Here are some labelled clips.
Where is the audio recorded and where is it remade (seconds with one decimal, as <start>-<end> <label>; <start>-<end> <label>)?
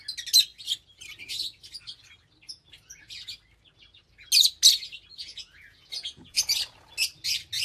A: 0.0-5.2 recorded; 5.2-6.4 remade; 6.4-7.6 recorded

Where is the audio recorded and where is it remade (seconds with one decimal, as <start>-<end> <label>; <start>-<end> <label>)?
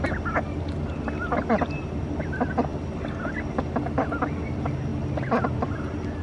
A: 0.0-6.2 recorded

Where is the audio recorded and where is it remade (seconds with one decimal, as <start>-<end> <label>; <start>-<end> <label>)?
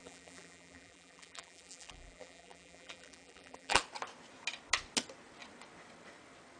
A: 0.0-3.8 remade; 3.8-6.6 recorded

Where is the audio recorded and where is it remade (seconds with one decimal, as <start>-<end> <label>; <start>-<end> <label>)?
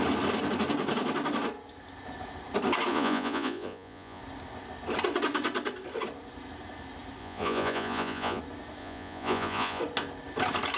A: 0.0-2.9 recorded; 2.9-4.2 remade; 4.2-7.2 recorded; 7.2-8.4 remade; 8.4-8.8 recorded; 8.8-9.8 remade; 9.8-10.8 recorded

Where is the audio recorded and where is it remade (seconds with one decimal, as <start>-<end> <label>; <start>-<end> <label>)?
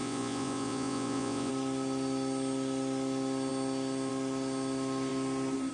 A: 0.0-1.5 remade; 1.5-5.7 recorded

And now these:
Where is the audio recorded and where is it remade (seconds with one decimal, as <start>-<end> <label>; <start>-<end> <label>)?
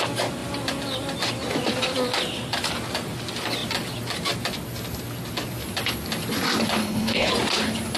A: 0.0-6.8 recorded; 6.8-7.3 remade; 7.3-8.0 recorded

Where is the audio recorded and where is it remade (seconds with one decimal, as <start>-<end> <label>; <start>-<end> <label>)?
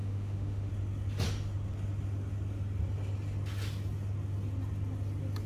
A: 0.0-0.7 remade; 0.7-5.5 recorded